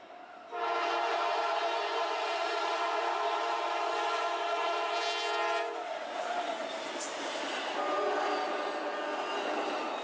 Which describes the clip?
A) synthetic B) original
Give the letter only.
B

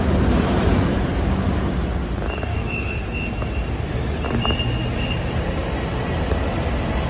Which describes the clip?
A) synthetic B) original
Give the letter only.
B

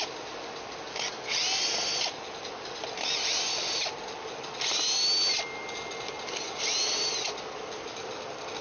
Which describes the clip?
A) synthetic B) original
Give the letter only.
B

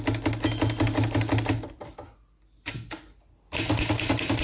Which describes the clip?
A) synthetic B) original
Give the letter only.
B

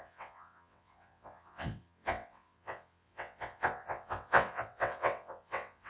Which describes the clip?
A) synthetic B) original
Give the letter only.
A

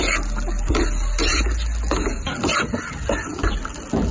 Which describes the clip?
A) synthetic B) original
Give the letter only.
B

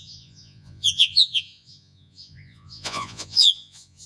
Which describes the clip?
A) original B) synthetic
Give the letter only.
B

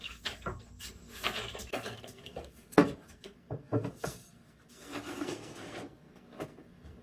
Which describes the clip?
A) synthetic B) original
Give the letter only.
A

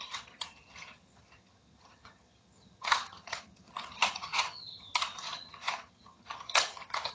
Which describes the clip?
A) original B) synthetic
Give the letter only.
B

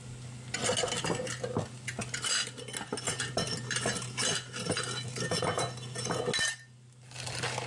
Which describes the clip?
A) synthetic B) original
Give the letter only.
B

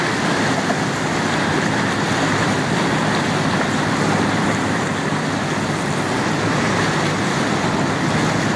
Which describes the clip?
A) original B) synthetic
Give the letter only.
A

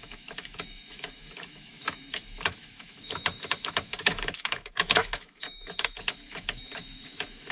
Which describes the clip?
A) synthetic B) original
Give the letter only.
A